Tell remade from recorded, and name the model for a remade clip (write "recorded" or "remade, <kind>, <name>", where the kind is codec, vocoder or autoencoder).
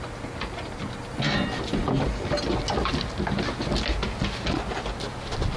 recorded